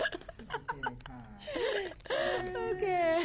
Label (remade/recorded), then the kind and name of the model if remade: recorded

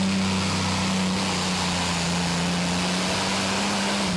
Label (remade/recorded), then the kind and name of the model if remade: recorded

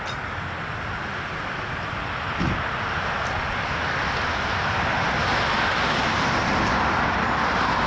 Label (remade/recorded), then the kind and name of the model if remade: recorded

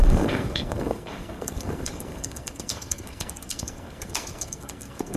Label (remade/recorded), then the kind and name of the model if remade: remade, codec, SNAC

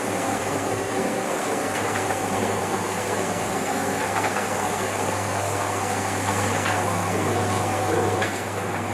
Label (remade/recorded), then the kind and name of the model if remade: remade, codec, SNAC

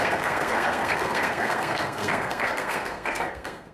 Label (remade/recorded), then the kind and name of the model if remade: remade, codec, SNAC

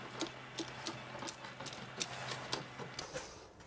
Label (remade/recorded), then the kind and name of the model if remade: recorded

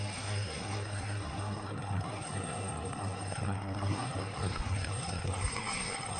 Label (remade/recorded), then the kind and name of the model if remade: remade, codec, SNAC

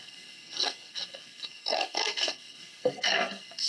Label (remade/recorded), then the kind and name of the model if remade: remade, codec, SNAC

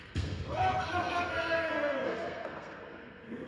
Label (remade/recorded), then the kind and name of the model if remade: remade, codec, SNAC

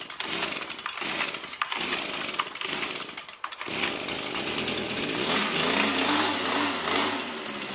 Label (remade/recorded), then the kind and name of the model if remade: recorded